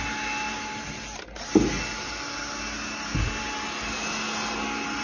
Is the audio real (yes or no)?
yes